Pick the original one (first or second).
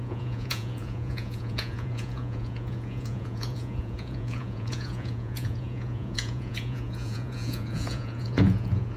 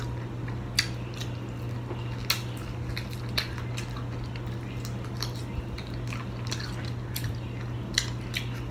second